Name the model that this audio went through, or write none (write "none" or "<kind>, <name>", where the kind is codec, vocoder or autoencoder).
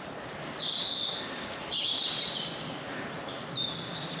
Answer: none